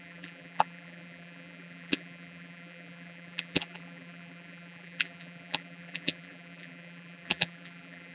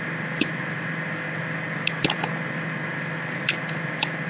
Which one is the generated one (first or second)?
first